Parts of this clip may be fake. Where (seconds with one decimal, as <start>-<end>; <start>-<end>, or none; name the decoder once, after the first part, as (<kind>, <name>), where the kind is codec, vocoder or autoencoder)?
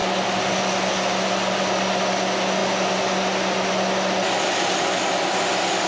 none